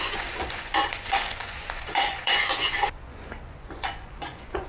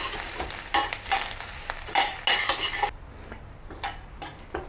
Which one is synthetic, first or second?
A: first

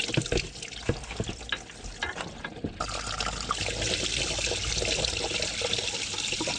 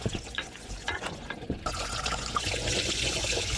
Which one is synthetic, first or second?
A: second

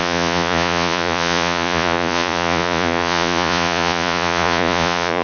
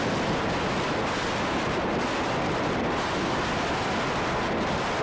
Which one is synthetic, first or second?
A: first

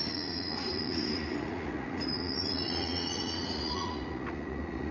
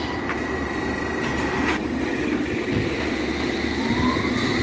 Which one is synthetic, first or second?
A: first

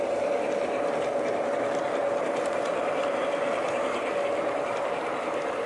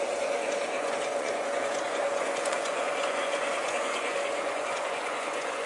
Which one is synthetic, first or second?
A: second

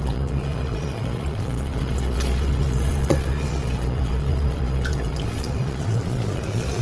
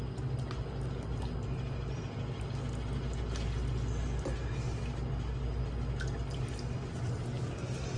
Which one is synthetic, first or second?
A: first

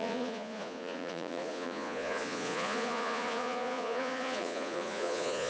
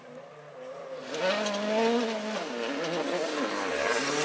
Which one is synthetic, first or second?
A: first